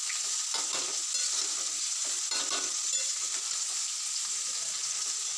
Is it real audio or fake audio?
real